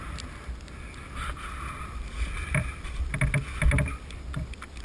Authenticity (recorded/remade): recorded